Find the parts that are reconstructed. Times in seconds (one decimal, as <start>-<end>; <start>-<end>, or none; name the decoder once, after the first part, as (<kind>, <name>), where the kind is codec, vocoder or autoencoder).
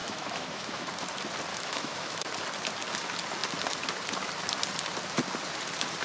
0.0-0.9 (autoencoder, DAC-VAE); 1.5-2.3